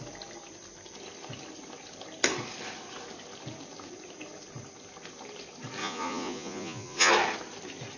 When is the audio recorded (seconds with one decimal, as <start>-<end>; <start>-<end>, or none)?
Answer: 0.0-5.8; 7.1-8.0

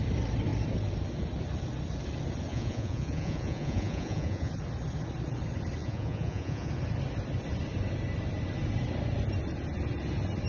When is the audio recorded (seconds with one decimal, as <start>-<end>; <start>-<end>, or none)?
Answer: 0.0-2.5; 4.5-5.8; 6.7-10.5